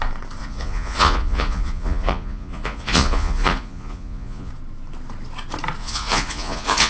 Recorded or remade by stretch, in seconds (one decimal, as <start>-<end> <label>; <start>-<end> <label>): 0.0-0.4 recorded; 0.4-4.5 remade; 4.5-5.8 recorded; 5.8-6.9 remade